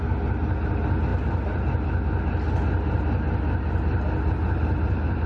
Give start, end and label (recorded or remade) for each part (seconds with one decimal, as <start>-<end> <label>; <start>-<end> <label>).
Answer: 0.0-5.3 recorded

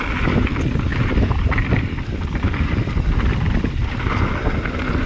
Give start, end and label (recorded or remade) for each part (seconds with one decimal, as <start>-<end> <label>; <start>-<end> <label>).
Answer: 0.0-0.9 recorded; 0.9-4.0 remade; 4.0-5.1 recorded

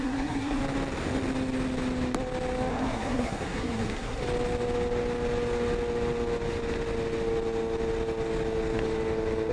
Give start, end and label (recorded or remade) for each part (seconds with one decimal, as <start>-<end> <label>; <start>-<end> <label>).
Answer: 0.0-0.6 remade; 0.6-2.7 recorded; 2.7-4.2 remade; 4.2-9.5 recorded

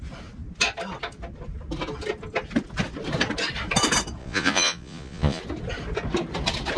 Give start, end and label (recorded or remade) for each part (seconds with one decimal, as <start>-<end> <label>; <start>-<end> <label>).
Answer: 0.0-4.2 recorded; 4.2-5.4 remade; 5.4-6.8 recorded

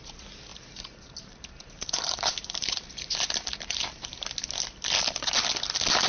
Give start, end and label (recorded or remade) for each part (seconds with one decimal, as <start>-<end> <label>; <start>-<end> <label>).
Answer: 0.0-0.5 recorded; 0.5-4.2 remade; 4.2-6.1 recorded